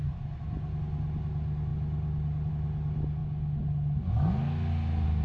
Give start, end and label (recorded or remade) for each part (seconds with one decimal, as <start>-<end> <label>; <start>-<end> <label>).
0.0-5.2 recorded